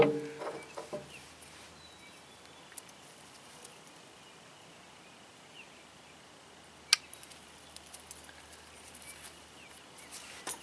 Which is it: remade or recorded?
recorded